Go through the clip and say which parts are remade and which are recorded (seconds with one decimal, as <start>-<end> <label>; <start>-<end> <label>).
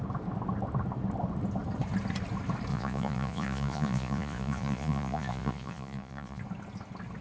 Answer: 0.0-2.7 recorded; 2.7-6.4 remade; 6.4-7.2 recorded